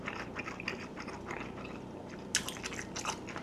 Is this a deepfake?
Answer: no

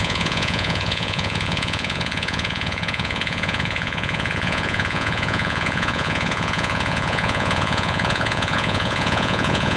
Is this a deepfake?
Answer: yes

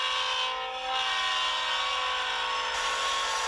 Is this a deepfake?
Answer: no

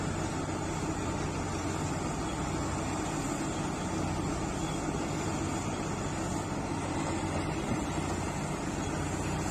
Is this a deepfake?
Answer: no